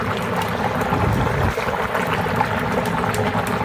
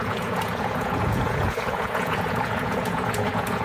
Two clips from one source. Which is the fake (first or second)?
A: second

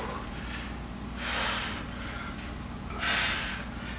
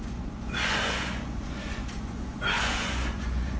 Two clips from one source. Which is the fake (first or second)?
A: second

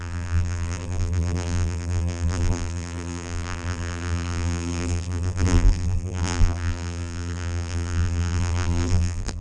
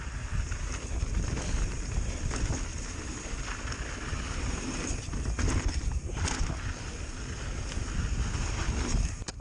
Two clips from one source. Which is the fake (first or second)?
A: first